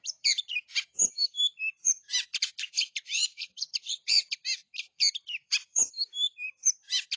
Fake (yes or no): yes